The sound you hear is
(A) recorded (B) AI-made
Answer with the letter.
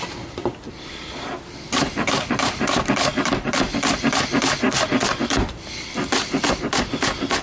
B